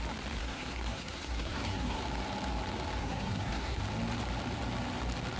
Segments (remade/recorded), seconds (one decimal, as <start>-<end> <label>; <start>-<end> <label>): 0.0-0.4 recorded; 0.4-2.0 remade; 2.0-3.0 recorded; 3.0-3.8 remade; 3.8-5.4 recorded